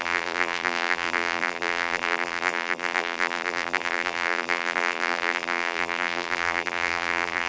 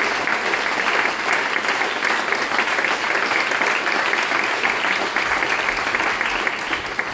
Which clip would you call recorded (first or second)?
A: second